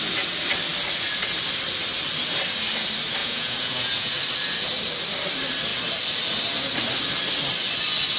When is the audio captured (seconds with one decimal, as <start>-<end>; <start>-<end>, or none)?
0.0-3.2; 4.1-8.2